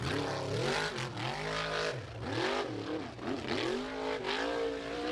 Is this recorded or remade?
recorded